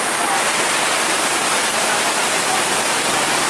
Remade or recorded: remade